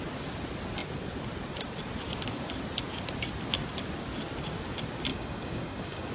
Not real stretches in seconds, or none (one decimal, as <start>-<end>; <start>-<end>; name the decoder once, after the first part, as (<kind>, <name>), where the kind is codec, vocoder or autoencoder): 5.1-6.1 (codec, DAC)